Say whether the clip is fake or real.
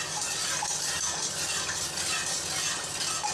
real